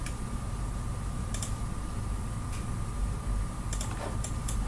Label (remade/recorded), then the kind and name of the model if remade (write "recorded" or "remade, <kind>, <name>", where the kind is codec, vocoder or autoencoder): recorded